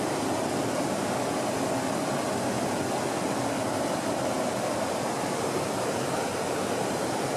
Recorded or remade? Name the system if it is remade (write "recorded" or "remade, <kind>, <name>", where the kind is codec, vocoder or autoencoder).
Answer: recorded